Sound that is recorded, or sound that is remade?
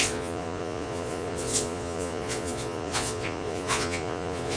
remade